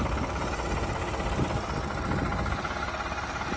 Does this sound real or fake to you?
real